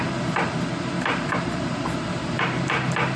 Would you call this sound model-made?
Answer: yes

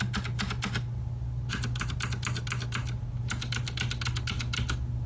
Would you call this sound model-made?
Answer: no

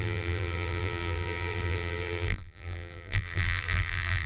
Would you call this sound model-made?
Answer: yes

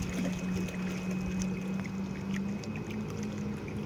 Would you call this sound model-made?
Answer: no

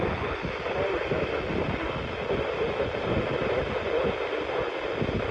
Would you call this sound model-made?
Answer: yes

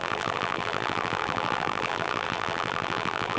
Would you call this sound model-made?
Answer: yes